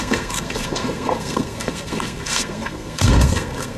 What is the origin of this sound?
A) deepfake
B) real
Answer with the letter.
A